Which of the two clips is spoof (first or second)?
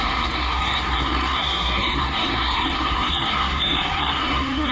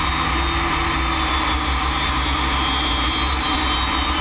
first